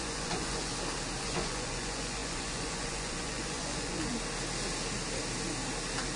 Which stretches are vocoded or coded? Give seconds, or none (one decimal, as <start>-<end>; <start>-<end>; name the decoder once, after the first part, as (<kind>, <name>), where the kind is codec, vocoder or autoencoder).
0.0-0.7 (vocoder, Vocos); 1.2-4.1